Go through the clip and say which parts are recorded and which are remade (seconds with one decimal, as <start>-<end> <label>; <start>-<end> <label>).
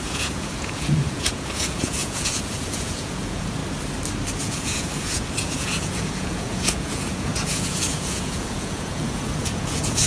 0.0-3.6 remade; 3.6-4.4 recorded; 4.4-10.1 remade